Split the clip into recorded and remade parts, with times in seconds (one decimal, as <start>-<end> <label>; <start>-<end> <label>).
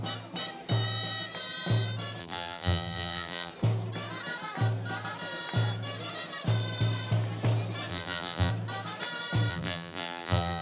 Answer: 0.0-2.2 recorded; 2.2-3.5 remade; 3.5-7.9 recorded; 7.9-8.5 remade; 8.5-9.5 recorded; 9.5-10.6 remade